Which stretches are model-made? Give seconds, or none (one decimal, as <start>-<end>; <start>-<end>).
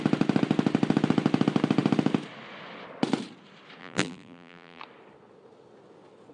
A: 3.8-4.8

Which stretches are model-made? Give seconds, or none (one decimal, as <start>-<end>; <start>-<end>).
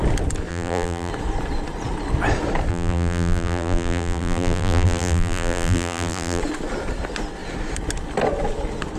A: 0.5-1.1; 2.7-6.4